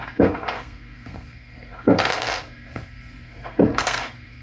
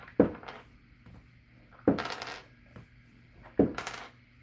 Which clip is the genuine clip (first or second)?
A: second